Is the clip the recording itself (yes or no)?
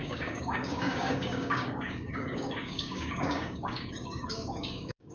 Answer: no